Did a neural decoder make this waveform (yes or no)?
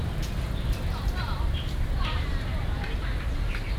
yes